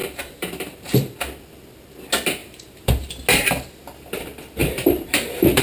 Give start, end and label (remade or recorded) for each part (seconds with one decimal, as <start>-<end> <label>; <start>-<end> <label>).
0.0-1.2 remade; 1.2-2.4 recorded; 2.4-3.2 remade; 3.2-4.6 recorded; 4.6-5.6 remade